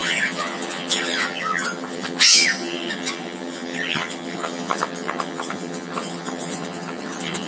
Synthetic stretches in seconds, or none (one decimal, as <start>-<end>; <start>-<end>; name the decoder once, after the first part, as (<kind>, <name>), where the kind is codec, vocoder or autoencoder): 0.0-7.5 (vocoder, HiFi-GAN)